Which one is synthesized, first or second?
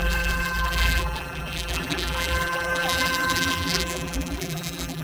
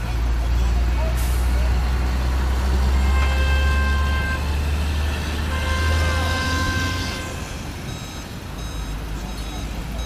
first